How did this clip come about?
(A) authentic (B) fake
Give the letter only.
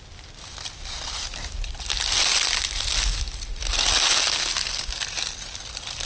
A